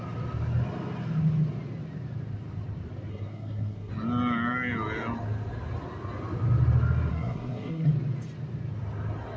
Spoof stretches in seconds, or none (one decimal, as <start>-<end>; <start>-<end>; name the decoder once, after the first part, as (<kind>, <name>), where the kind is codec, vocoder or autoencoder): 3.1-3.9 (codec, SNAC); 7.1-7.9